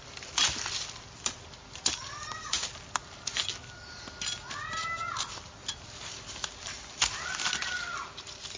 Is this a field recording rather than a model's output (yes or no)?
yes